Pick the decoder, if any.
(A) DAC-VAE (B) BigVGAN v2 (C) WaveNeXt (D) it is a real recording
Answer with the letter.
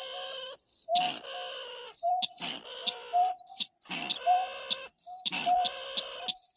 B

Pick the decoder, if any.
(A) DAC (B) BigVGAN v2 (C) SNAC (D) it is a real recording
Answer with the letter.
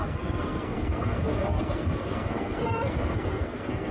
C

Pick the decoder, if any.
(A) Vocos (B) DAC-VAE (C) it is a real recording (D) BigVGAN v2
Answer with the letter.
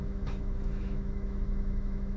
B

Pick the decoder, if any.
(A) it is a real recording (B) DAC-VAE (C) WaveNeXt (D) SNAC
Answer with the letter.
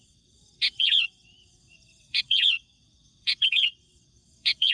C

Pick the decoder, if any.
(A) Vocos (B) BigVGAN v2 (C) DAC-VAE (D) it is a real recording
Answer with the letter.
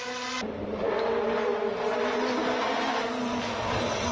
D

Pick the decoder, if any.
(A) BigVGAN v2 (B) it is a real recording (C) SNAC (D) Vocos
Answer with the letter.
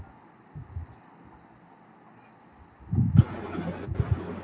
B